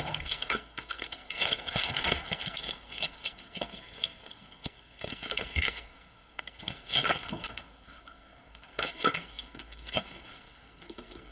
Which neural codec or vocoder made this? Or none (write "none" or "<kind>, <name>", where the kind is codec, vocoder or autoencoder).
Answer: codec, SNAC